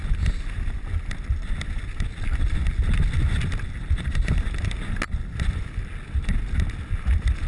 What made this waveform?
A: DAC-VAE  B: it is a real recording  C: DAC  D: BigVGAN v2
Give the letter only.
B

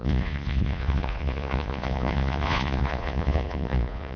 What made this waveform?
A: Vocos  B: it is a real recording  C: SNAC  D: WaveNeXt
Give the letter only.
A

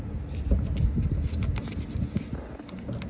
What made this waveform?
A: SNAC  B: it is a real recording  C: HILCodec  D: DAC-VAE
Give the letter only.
B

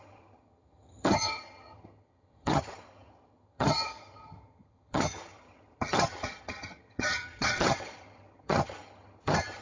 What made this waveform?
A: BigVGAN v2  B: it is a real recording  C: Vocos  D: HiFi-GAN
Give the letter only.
D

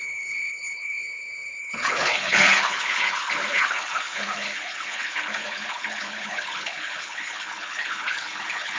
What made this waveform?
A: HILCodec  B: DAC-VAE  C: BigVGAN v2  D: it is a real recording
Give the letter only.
A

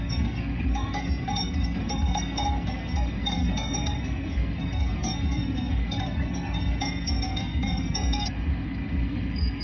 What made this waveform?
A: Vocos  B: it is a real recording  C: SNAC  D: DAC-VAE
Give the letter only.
C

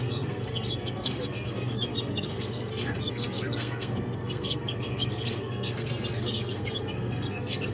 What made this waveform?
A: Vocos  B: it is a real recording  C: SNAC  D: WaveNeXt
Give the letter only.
C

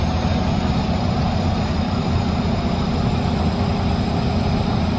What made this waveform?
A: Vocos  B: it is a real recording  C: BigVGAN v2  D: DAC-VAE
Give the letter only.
B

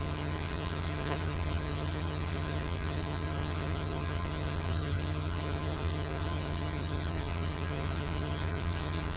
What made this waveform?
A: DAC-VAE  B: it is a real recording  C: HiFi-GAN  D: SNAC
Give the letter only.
C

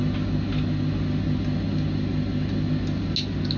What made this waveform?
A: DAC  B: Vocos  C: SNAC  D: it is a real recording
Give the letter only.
D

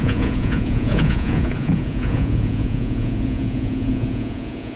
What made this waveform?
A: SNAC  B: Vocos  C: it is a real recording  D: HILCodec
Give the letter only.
B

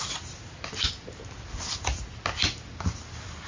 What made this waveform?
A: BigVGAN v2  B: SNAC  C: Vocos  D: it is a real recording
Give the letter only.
D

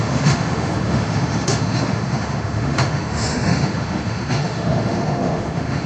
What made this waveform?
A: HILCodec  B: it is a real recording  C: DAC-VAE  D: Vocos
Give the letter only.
C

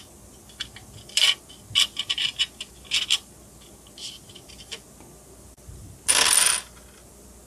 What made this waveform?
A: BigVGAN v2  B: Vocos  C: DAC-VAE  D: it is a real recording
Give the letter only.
D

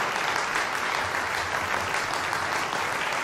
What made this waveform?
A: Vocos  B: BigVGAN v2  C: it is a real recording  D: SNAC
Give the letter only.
C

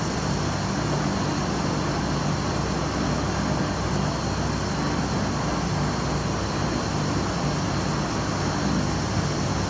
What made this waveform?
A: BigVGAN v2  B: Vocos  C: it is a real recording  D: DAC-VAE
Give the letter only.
C